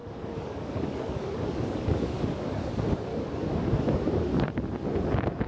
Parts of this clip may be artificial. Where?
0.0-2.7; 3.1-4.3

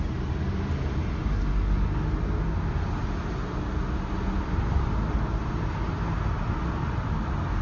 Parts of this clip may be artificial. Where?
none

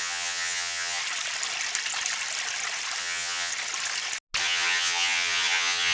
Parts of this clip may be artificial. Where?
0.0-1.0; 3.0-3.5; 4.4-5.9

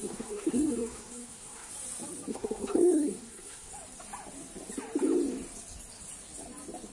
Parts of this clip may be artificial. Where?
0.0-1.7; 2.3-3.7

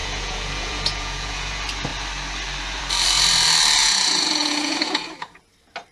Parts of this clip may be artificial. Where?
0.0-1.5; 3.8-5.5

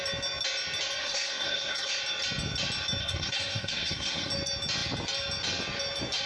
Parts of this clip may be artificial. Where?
1.0-2.0; 3.0-4.3